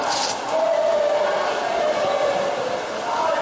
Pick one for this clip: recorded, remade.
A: recorded